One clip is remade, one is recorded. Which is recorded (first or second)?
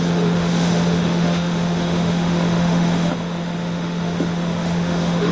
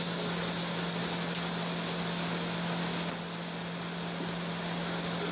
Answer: second